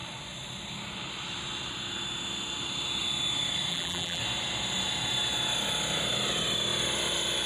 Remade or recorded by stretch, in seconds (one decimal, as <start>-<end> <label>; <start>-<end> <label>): 0.0-3.7 recorded; 3.7-4.2 remade; 4.2-7.5 recorded